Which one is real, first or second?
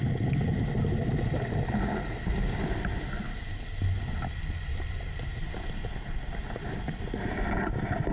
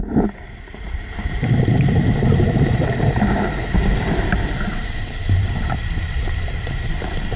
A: first